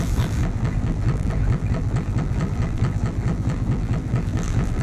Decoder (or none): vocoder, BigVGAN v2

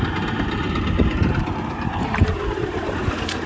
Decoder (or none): vocoder, BigVGAN v2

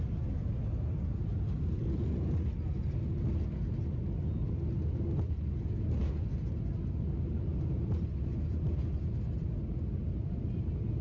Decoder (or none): none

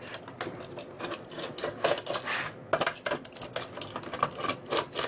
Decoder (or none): none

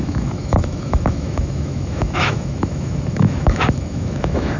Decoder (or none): autoencoder, DAC-VAE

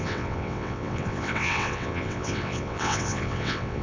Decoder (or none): vocoder, WaveNeXt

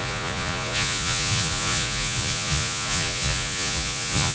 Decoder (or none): vocoder, Vocos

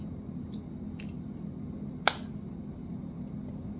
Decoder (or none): none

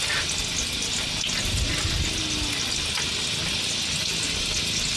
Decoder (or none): none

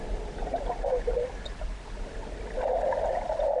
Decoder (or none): none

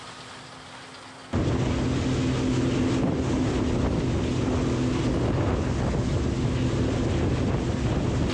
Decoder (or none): none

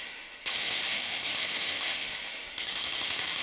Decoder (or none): autoencoder, DAC-VAE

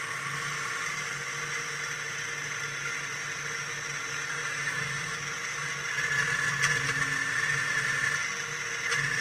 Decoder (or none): none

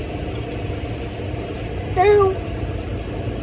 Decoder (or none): none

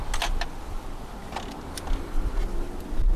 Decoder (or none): none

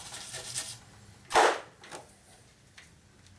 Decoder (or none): none